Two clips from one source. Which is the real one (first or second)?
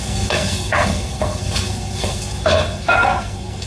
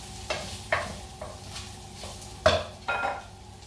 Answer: second